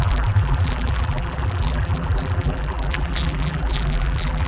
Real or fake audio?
fake